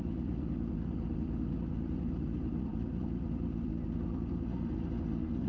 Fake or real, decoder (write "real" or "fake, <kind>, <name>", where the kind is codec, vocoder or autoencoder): real